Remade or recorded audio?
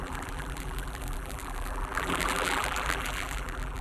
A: remade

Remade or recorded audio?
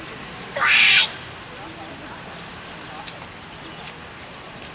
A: remade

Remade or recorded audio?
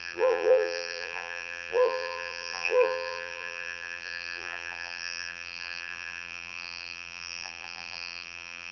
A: remade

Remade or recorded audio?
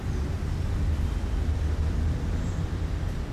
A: remade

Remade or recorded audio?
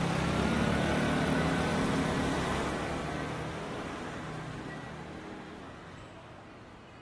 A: recorded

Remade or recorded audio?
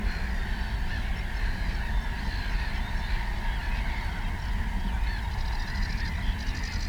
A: recorded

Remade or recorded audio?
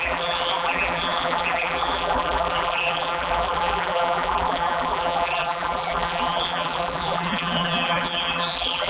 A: remade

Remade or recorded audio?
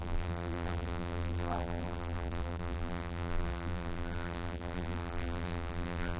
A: remade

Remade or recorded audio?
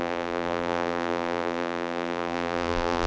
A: remade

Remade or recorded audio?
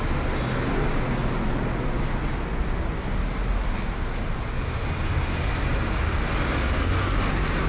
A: recorded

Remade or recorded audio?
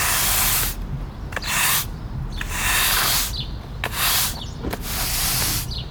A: recorded